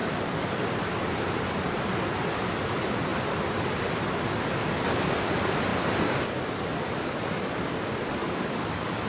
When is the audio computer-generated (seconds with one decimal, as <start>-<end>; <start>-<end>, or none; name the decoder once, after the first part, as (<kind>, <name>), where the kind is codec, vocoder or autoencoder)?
0.0-0.5 (codec, DAC); 8.2-9.1